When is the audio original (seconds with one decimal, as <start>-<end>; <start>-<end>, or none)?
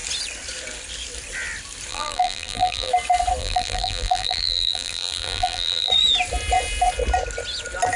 0.0-1.9; 2.9-3.4; 5.9-8.0